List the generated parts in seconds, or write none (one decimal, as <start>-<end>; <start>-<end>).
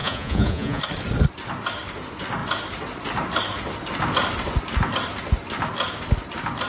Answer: 0.0-0.8